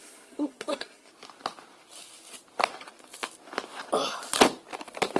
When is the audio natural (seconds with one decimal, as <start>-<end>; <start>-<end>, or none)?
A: 1.1-5.2